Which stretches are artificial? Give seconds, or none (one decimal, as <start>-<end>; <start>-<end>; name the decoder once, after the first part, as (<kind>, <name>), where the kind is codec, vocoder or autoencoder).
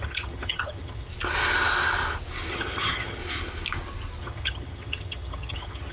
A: 0.0-1.1 (vocoder, HiFi-GAN); 2.5-3.2; 4.2-5.9